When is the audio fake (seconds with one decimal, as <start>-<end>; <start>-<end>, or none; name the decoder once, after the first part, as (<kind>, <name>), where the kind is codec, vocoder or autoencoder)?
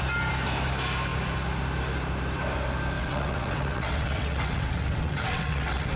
3.0-6.0 (vocoder, WaveNeXt)